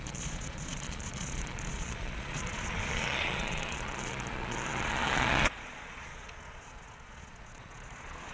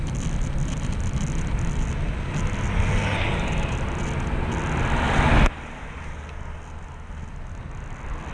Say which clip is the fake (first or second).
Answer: first